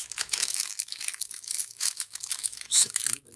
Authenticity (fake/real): fake